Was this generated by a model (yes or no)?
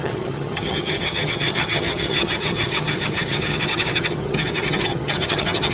yes